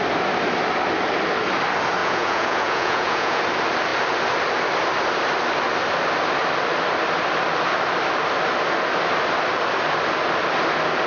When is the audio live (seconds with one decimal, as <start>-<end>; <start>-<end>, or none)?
0.0-2.0; 3.4-11.1